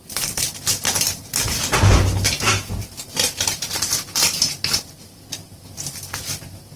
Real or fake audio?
fake